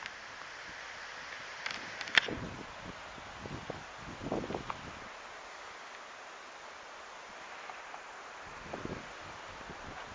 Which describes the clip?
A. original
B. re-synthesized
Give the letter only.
A